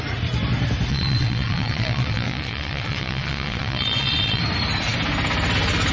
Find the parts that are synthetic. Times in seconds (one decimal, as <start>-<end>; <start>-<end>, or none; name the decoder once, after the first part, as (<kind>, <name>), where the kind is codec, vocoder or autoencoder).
0.9-4.4 (vocoder, WaveNeXt)